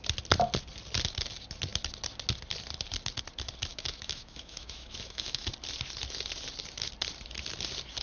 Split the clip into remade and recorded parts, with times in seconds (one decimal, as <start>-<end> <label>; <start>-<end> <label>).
0.0-3.7 recorded; 3.7-5.5 remade; 5.5-8.0 recorded